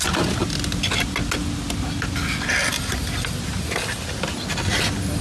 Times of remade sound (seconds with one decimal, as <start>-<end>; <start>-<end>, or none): none